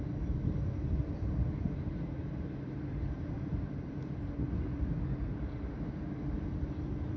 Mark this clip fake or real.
real